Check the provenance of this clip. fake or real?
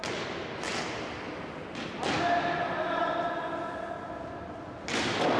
real